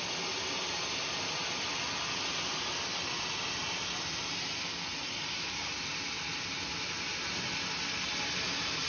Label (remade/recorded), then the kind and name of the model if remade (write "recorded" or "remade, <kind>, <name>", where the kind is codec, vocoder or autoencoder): recorded